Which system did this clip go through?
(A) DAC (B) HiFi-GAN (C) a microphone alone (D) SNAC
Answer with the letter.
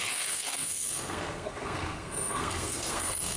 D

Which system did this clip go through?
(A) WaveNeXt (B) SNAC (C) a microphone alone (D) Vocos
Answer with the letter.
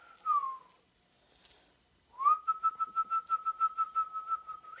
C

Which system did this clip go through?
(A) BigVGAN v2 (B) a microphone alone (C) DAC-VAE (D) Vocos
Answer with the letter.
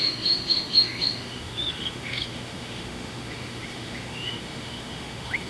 C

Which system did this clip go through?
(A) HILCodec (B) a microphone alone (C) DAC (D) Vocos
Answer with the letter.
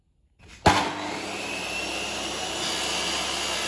B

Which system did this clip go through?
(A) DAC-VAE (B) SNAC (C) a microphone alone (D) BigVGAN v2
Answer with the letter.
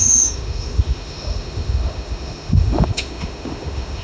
A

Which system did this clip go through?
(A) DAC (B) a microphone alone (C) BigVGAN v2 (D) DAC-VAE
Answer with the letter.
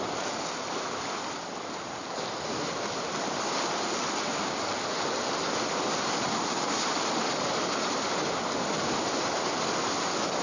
B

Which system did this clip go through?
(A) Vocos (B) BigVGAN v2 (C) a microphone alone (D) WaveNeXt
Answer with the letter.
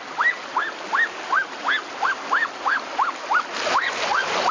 C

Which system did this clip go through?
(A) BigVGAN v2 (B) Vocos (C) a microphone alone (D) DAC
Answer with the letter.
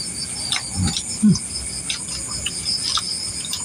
C